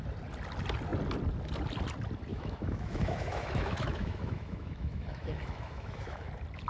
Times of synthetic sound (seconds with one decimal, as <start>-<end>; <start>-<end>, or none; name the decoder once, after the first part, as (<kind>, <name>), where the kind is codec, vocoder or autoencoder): 2.3-6.3 (autoencoder, DAC-VAE)